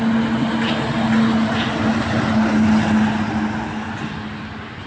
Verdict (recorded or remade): recorded